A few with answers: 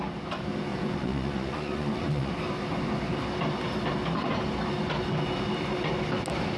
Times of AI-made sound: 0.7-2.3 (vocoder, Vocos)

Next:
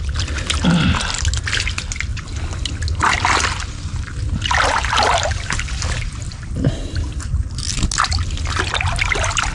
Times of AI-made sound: none

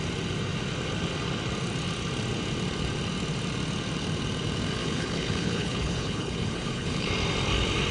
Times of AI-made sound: 4.8-7.1 (codec, HILCodec)

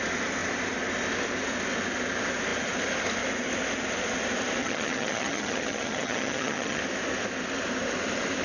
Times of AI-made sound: 4.6-6.8 (vocoder, HiFi-GAN)